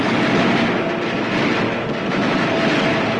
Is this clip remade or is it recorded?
recorded